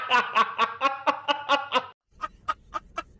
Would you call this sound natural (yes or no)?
yes